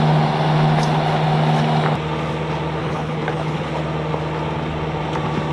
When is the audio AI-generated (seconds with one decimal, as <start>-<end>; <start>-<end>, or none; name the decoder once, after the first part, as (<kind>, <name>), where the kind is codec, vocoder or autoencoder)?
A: 2.8-3.7 (codec, HILCodec)